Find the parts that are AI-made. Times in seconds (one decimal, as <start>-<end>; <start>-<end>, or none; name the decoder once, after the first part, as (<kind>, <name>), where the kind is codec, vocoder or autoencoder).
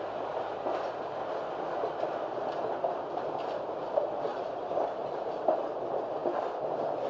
4.3-5.6 (vocoder, BigVGAN v2)